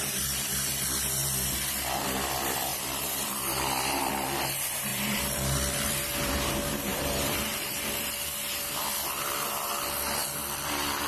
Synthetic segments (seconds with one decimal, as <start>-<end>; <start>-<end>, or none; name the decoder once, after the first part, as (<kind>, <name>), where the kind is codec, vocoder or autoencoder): 2.7-4.1 (vocoder, BigVGAN v2); 4.9-6.3; 6.9-8.2